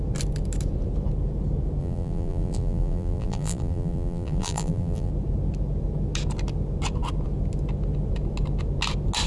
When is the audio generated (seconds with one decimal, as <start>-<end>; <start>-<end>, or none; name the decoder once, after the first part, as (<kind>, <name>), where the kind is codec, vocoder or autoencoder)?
1.8-5.1 (vocoder, BigVGAN v2)